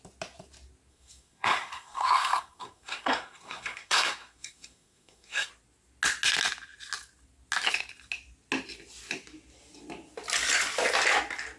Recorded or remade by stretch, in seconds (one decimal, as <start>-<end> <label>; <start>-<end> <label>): 0.0-0.9 recorded; 0.9-5.5 remade; 5.5-11.6 recorded